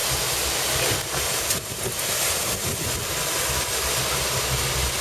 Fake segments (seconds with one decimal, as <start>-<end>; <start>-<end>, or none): none